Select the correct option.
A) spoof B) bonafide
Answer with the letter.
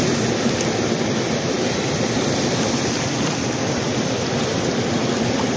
B